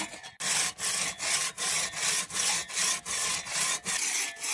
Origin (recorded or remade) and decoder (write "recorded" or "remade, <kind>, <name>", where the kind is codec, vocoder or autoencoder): recorded